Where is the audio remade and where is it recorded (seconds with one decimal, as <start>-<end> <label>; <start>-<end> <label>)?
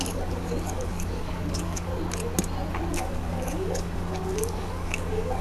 0.0-1.9 remade; 1.9-2.9 recorded; 2.9-5.4 remade